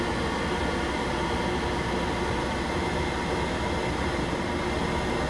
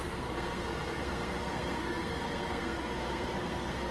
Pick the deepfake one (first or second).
second